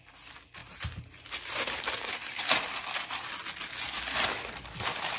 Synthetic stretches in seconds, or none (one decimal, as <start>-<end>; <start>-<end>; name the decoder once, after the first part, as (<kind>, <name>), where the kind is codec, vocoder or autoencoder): none